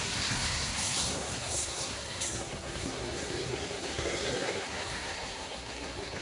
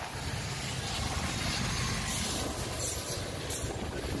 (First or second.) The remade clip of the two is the first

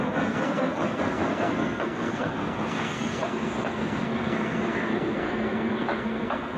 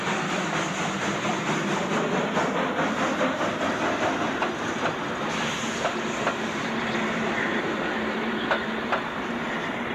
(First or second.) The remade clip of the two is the first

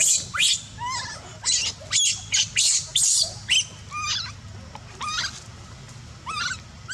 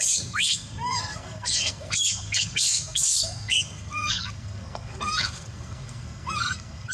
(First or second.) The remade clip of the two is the second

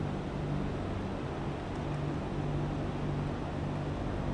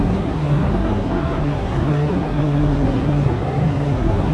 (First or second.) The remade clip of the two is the second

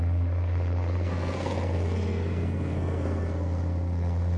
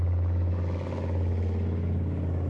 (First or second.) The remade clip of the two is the first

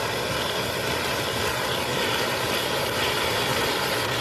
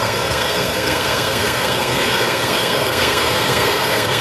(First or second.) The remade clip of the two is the second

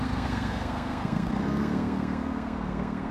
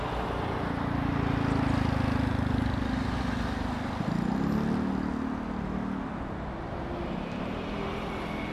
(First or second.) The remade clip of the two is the first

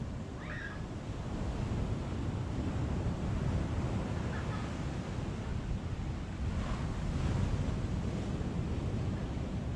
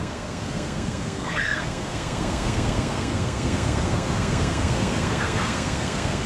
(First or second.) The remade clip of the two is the second